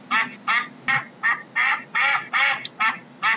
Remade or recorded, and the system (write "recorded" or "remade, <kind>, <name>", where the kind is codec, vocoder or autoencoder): recorded